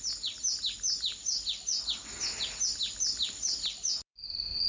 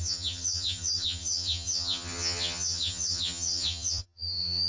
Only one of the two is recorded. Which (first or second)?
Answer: first